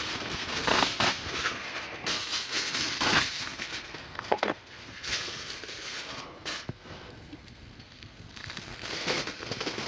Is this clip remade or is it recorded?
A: remade